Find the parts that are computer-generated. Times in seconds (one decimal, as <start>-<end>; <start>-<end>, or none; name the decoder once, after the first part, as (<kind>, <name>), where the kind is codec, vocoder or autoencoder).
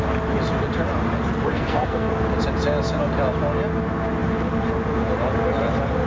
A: 1.5-2.1 (codec, SNAC)